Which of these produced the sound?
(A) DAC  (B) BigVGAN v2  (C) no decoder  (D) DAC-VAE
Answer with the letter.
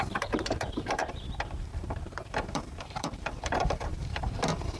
B